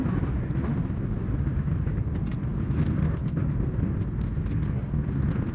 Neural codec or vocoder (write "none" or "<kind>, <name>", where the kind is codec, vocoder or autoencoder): none